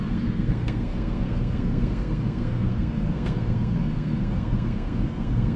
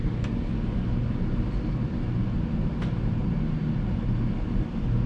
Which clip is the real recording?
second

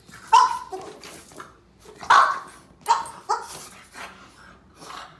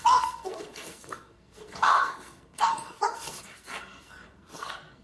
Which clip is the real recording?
first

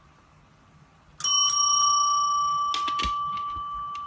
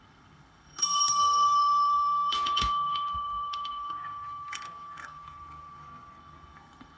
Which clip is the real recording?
first